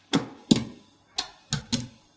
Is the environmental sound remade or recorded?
recorded